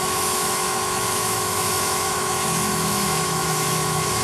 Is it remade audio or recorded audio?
remade